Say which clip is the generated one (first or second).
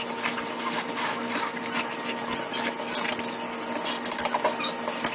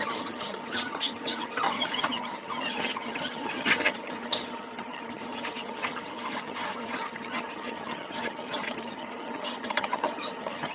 second